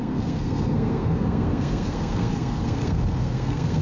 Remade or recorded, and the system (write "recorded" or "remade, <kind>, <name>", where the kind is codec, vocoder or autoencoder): remade, codec, SNAC